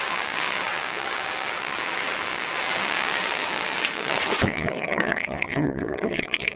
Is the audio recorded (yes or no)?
no